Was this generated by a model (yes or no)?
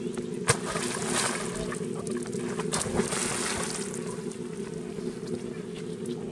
no